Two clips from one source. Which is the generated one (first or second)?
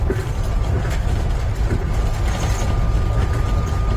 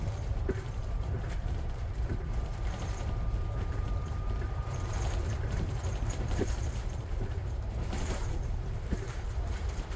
second